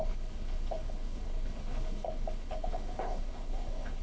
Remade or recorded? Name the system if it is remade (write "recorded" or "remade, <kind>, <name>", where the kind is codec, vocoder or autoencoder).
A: remade, codec, HILCodec